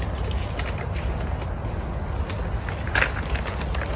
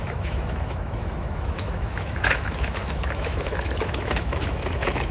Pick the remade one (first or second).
second